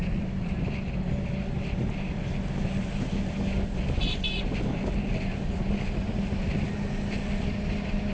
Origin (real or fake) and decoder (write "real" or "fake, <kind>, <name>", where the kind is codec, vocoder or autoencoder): real